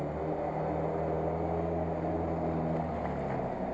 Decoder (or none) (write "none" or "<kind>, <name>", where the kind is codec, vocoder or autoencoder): none